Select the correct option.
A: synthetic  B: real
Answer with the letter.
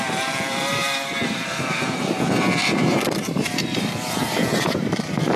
A